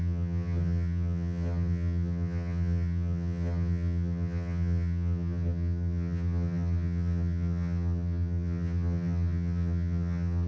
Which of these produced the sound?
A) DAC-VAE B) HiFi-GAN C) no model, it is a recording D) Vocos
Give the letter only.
B